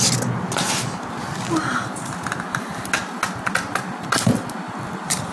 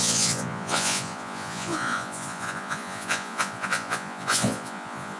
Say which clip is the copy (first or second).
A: second